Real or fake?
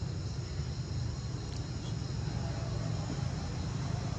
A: real